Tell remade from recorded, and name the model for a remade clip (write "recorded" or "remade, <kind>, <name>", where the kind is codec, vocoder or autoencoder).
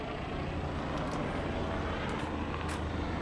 recorded